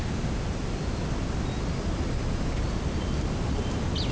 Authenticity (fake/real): real